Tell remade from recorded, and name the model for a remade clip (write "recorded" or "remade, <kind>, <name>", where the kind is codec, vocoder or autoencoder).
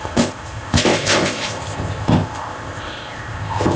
remade, codec, ZipCodec